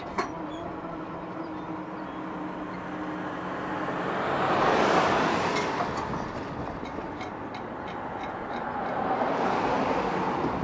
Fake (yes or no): no